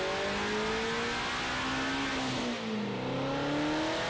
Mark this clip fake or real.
real